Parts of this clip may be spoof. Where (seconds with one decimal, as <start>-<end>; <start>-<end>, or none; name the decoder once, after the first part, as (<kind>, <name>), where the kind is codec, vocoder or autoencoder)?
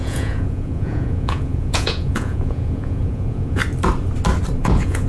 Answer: 0.0-3.6 (vocoder, Vocos); 4.6-5.1